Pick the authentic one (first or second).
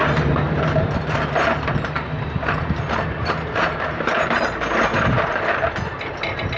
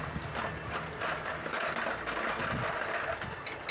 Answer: second